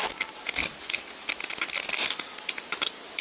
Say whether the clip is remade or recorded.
recorded